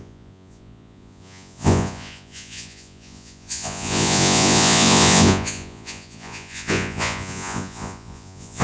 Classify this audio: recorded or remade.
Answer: remade